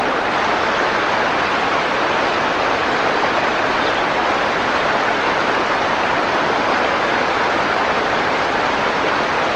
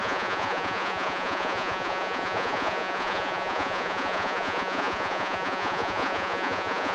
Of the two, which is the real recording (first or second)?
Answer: first